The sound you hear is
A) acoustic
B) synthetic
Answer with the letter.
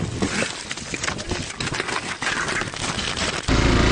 A